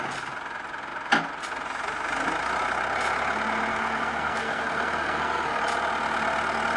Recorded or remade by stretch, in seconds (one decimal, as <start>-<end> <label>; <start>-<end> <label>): 0.0-3.7 recorded; 3.7-5.6 remade; 5.6-6.8 recorded